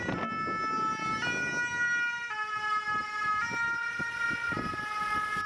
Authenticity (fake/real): real